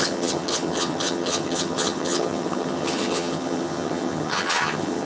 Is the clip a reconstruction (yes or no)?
yes